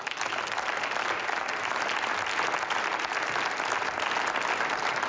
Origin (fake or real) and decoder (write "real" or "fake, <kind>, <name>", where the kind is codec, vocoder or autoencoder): real